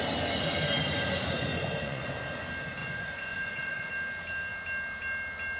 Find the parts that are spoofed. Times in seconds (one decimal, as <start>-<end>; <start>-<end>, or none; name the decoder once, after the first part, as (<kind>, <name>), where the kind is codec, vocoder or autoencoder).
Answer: 1.5-2.1 (vocoder, Vocos); 2.8-3.9